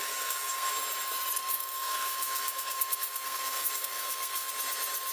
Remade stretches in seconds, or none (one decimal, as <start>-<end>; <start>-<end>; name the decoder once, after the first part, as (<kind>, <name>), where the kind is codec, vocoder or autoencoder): 0.0-0.7 (codec, SNAC); 1.4-4.5